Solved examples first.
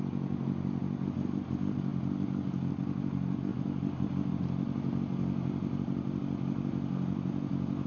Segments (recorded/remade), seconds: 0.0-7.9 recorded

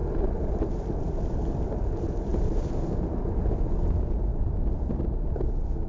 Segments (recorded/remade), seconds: 0.0-1.5 remade; 1.5-2.3 recorded; 2.3-3.4 remade; 3.4-5.9 recorded

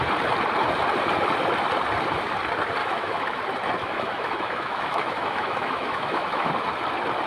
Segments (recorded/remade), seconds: 0.0-2.8 recorded; 2.8-3.4 remade; 3.4-3.8 recorded; 3.8-6.5 remade; 6.5-7.3 recorded

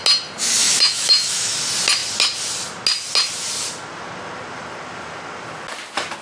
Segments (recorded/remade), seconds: 0.0-0.6 recorded; 0.6-1.6 remade; 1.6-6.2 recorded

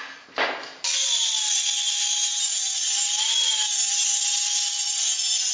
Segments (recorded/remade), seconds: 0.0-5.5 recorded

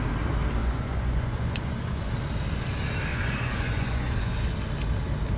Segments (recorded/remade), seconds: 0.0-0.6 recorded; 0.6-2.0 remade; 2.0-3.1 recorded; 3.1-4.5 remade; 4.5-5.4 recorded